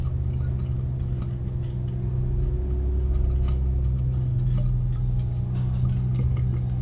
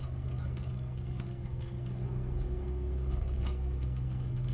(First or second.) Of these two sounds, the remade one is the second